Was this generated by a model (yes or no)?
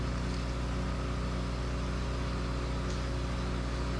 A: no